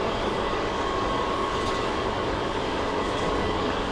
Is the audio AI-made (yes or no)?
yes